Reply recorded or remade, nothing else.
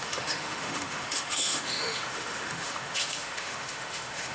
remade